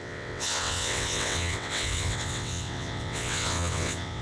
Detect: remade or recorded remade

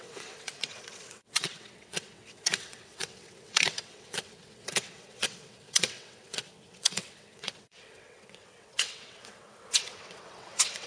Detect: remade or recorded remade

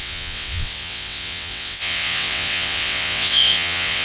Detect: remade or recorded remade